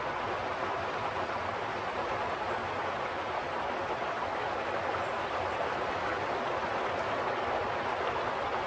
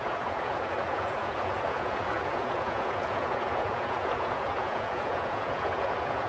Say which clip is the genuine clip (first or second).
first